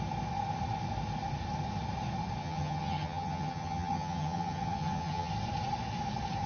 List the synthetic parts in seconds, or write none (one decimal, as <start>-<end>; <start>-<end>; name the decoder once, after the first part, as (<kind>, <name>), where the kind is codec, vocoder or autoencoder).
2.4-5.3 (vocoder, HiFi-GAN)